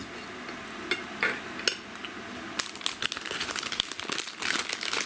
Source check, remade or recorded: recorded